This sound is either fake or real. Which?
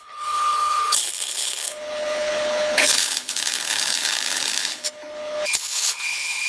fake